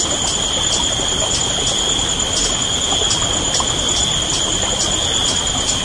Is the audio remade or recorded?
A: recorded